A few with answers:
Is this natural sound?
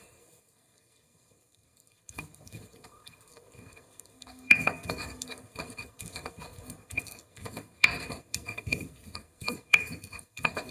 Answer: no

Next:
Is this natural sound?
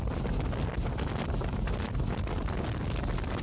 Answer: yes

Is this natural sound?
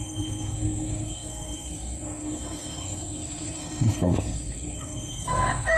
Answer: no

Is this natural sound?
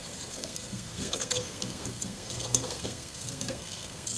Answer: no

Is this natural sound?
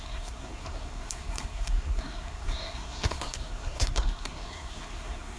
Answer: no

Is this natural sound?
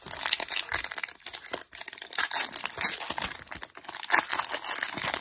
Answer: yes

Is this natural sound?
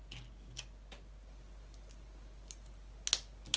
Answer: yes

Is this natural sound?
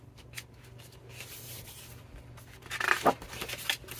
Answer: yes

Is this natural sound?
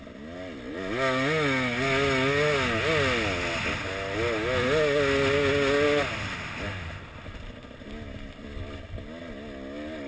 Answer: yes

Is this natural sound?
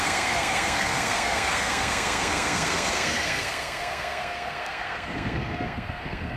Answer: no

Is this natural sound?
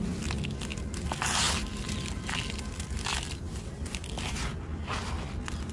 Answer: yes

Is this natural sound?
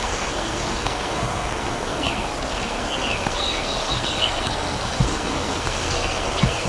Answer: no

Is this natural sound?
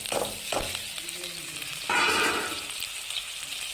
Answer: yes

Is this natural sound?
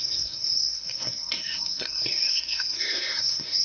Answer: no